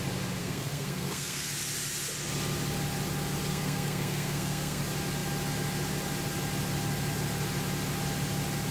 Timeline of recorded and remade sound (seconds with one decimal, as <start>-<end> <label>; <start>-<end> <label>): 0.0-0.4 recorded; 0.4-1.5 remade; 1.5-3.5 recorded; 3.5-4.8 remade; 4.8-8.7 recorded

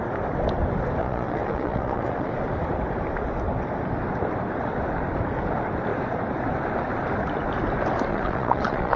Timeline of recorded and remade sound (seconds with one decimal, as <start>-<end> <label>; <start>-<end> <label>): 0.0-1.0 recorded; 1.0-2.3 remade; 2.3-8.1 recorded; 8.1-9.0 remade

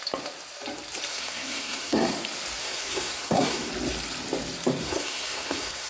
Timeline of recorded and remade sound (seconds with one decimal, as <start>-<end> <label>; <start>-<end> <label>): 0.0-1.1 recorded; 1.1-2.1 remade; 2.1-2.6 recorded; 2.6-3.7 remade; 3.7-4.8 recorded; 4.8-5.9 remade

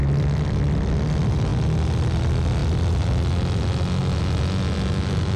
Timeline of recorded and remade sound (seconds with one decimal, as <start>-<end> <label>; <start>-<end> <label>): 0.0-5.4 recorded

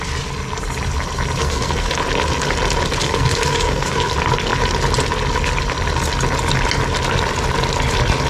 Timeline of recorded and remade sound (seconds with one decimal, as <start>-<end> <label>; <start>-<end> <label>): 0.0-1.4 recorded; 1.4-1.9 remade; 1.9-3.0 recorded; 3.0-4.1 remade; 4.1-8.3 recorded

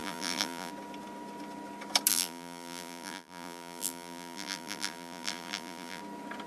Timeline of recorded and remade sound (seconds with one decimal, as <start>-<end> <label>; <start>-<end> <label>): 0.0-0.7 remade; 0.7-2.1 recorded; 2.1-6.0 remade; 6.0-6.5 recorded

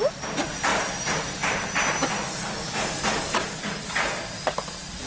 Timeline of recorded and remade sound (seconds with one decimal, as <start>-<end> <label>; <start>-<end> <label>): 0.0-5.1 recorded

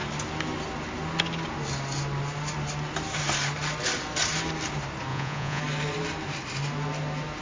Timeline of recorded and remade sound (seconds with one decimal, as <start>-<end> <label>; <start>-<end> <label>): 0.0-5.1 recorded; 5.1-5.6 remade; 5.6-7.4 recorded